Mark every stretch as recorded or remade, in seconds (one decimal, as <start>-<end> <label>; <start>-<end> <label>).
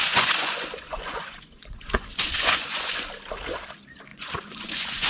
0.0-2.9 remade; 2.9-4.1 recorded; 4.1-5.1 remade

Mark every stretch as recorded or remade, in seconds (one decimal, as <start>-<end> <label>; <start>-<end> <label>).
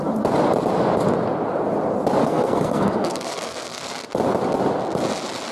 0.0-2.2 recorded; 2.2-3.9 remade; 3.9-5.5 recorded